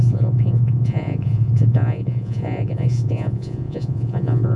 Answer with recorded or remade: remade